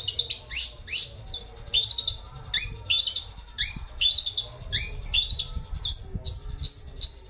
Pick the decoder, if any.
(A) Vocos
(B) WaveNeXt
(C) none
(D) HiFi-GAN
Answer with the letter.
C